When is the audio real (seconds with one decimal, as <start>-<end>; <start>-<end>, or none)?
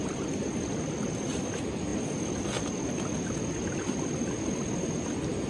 0.0-5.5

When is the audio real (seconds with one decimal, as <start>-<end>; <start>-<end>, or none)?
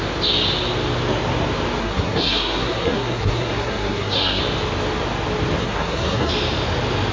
0.0-1.8; 4.4-5.6; 6.3-7.1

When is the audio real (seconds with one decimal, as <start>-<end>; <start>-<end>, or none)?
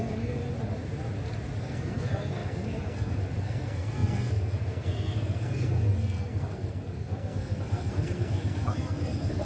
0.4-1.6